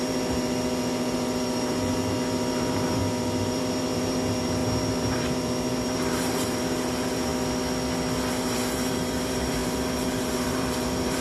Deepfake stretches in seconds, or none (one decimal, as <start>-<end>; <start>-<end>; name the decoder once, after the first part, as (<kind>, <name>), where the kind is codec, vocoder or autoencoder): 0.0-7.3 (vocoder, BigVGAN v2); 8.3-11.2